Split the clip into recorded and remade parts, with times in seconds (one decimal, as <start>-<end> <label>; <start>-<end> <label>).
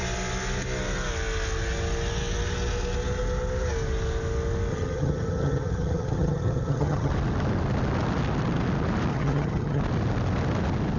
0.0-4.7 recorded; 4.7-7.1 remade; 7.1-9.1 recorded; 9.1-9.8 remade; 9.8-11.0 recorded